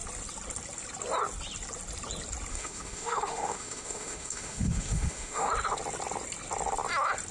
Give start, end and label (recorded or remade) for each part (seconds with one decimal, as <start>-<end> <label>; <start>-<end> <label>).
0.0-2.5 recorded; 2.5-5.5 remade; 5.5-7.3 recorded